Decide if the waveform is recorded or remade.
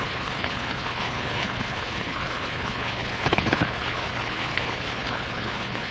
remade